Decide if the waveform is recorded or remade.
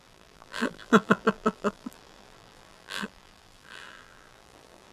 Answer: remade